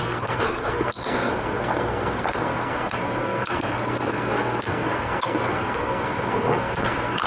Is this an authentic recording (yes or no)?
no